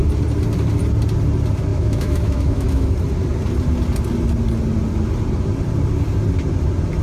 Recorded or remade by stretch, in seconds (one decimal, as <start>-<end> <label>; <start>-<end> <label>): 0.0-1.7 recorded; 1.7-2.9 remade; 2.9-7.0 recorded